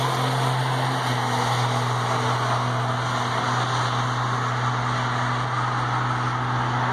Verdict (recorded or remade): recorded